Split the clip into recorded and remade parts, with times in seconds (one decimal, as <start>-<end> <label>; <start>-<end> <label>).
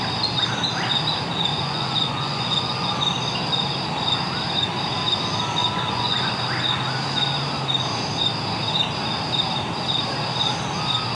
0.0-1.5 recorded; 1.5-2.9 remade; 2.9-5.6 recorded; 5.6-6.3 remade; 6.3-11.1 recorded